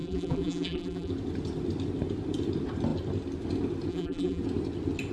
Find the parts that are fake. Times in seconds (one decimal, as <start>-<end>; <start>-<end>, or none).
0.0-1.1; 3.9-4.4